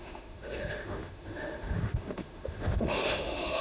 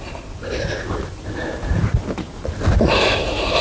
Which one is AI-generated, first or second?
first